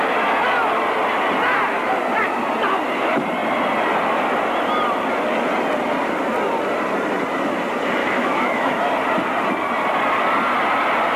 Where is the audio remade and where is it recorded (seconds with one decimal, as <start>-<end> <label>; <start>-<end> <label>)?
0.0-8.0 recorded; 8.0-8.8 remade; 8.8-11.2 recorded